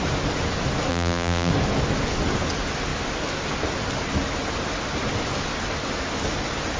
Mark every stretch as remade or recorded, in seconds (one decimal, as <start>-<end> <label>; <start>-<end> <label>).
0.0-0.9 recorded; 0.9-1.5 remade; 1.5-6.8 recorded